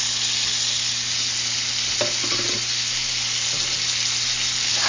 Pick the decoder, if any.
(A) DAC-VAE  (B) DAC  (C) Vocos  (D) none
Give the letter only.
D